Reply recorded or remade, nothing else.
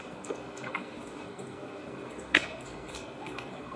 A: remade